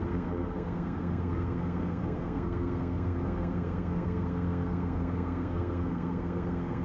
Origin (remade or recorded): remade